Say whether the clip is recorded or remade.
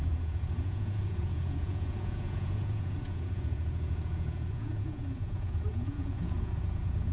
remade